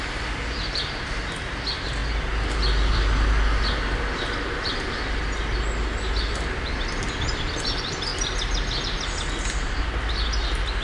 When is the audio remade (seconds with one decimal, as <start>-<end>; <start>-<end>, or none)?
none